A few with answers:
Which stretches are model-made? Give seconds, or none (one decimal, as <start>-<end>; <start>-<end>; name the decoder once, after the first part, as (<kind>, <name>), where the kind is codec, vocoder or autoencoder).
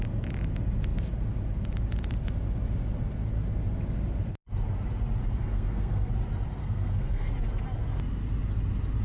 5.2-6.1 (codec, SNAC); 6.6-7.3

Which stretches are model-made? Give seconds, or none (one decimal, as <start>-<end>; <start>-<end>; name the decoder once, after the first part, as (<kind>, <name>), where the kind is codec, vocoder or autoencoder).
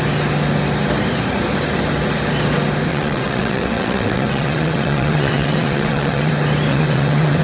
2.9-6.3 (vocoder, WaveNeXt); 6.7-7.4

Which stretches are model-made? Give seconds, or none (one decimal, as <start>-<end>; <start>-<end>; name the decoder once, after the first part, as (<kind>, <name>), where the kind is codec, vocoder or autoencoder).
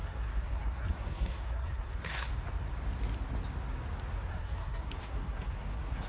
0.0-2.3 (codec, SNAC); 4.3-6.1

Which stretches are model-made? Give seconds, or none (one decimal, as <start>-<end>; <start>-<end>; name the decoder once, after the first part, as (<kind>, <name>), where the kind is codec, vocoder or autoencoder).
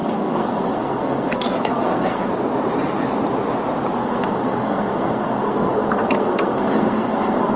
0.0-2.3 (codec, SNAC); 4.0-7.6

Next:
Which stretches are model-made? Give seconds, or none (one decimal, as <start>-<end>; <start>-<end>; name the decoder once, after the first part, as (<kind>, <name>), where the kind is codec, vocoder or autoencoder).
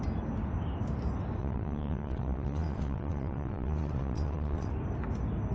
1.4-4.7 (vocoder, WaveNeXt)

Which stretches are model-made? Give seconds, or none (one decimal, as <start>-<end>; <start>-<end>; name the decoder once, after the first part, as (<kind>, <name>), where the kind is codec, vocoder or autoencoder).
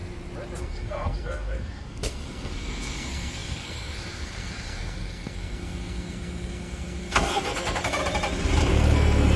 0.6-8.0 (codec, SNAC); 8.7-9.4